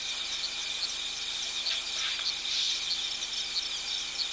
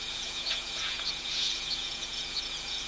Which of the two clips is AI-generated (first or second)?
second